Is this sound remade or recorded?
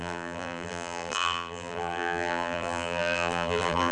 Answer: remade